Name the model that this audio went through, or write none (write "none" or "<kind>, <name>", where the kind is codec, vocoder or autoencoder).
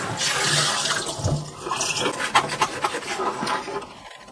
none